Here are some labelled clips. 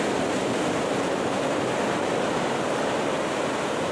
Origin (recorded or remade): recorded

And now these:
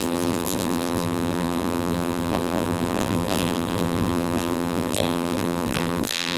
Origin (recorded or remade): remade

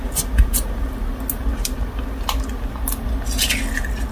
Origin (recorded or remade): recorded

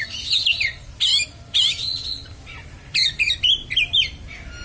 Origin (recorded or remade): remade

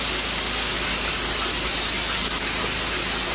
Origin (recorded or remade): recorded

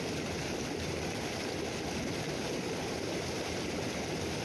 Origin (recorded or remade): recorded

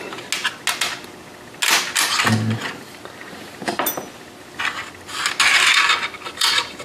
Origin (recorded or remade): recorded